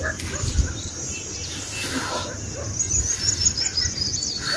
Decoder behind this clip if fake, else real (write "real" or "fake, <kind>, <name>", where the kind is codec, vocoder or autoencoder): real